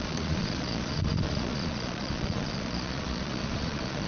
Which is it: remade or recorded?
remade